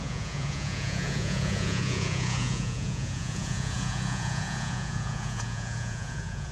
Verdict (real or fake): fake